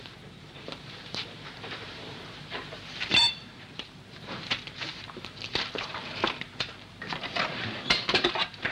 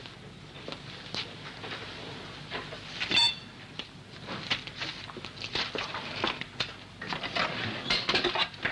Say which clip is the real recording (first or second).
second